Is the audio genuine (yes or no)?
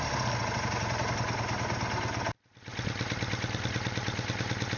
yes